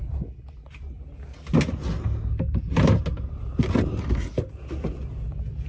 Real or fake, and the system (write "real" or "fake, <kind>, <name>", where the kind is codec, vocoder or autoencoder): real